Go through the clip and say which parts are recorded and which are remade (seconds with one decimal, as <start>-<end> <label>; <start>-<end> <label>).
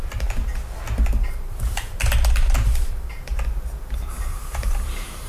0.0-0.4 remade; 0.4-1.3 recorded; 1.3-3.3 remade; 3.3-3.9 recorded; 3.9-5.3 remade